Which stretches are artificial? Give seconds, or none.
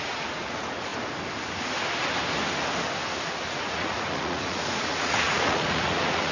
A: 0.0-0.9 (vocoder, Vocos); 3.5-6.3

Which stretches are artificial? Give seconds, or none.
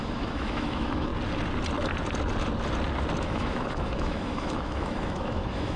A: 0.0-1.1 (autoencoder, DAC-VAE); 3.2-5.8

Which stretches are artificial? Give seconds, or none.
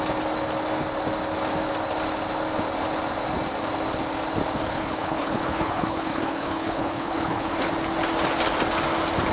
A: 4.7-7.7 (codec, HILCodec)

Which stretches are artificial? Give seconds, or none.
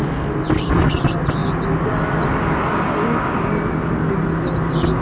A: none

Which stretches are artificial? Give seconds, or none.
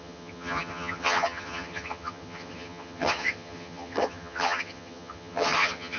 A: 0.0-6.0 (vocoder, HiFi-GAN)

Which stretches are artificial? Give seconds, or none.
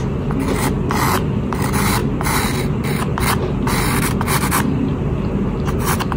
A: none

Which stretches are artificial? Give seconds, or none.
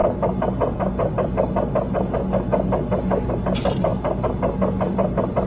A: 3.3-3.9 (vocoder, BigVGAN v2); 4.9-5.5